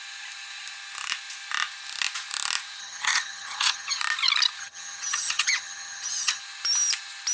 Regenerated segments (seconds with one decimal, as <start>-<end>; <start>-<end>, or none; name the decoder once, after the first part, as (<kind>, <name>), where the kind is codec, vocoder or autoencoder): 2.8-4.0 (vocoder, HiFi-GAN); 4.6-6.4